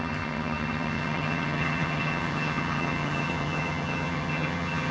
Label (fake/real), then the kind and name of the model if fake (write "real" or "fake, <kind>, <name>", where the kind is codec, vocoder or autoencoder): fake, vocoder, HiFi-GAN